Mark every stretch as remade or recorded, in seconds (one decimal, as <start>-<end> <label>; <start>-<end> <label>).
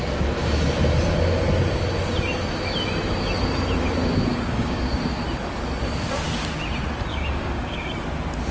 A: 0.0-4.3 recorded; 4.3-5.0 remade; 5.0-7.1 recorded; 7.1-7.9 remade; 7.9-8.5 recorded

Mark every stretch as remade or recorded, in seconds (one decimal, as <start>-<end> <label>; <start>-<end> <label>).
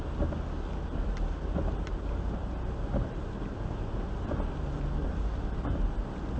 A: 0.0-6.4 recorded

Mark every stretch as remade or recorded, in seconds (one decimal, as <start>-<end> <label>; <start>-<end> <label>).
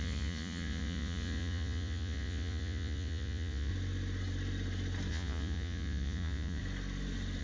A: 0.0-3.7 remade; 3.7-5.1 recorded; 5.1-6.6 remade; 6.6-7.4 recorded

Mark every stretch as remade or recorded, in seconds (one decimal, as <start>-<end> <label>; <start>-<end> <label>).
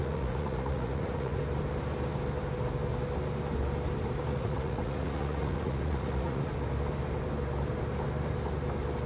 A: 0.0-1.4 remade; 1.4-4.3 recorded; 4.3-6.5 remade; 6.5-9.1 recorded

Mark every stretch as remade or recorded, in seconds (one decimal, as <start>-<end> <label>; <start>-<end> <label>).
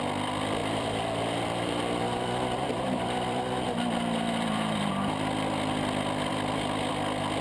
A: 0.0-0.6 recorded; 0.6-4.9 remade; 4.9-7.4 recorded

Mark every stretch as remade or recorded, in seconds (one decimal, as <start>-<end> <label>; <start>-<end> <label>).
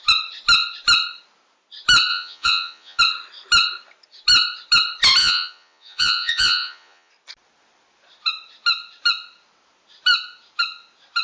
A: 0.0-2.1 recorded; 2.1-3.0 remade; 3.0-5.2 recorded; 5.2-7.1 remade; 7.1-11.2 recorded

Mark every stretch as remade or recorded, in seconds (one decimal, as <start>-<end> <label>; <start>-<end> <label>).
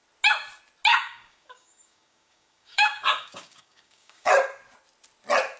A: 0.0-0.9 recorded; 0.9-4.3 remade; 4.3-5.6 recorded